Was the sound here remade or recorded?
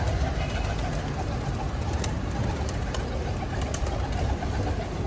recorded